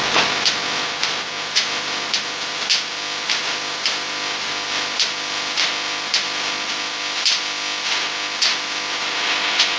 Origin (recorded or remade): recorded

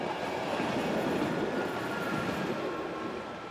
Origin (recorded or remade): recorded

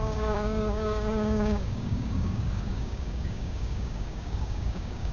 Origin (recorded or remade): remade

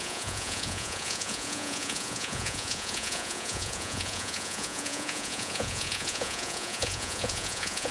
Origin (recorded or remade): remade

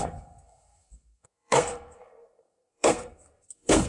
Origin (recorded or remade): remade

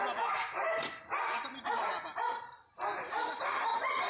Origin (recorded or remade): recorded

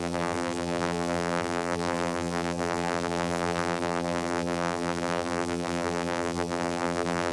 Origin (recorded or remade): remade